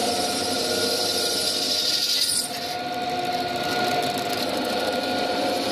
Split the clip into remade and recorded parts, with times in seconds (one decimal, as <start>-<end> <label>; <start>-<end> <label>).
0.0-1.4 remade; 1.4-4.8 recorded; 4.8-5.7 remade

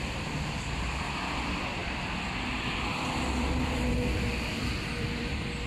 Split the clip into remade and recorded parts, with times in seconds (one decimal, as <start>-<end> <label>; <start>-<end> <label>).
0.0-5.7 remade

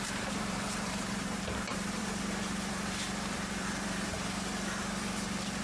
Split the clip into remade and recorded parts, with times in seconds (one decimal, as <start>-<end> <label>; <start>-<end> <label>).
0.0-2.0 remade; 2.0-5.6 recorded

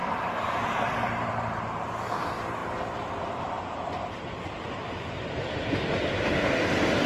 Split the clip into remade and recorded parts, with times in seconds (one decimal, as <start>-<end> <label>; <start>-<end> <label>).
0.0-1.3 remade; 1.3-2.6 recorded; 2.6-3.5 remade; 3.5-4.0 recorded; 4.0-5.4 remade; 5.4-7.1 recorded

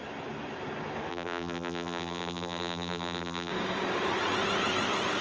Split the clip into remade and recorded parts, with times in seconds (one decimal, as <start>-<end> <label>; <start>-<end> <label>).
0.0-1.1 recorded; 1.1-3.5 remade; 3.5-5.2 recorded